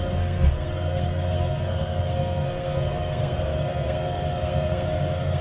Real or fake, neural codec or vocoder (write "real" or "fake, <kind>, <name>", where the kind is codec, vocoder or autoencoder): fake, codec, SNAC